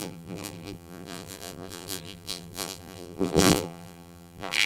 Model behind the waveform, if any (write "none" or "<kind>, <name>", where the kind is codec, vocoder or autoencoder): vocoder, BigVGAN v2